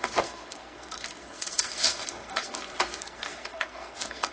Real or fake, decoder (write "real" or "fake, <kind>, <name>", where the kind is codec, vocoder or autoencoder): fake, codec, SNAC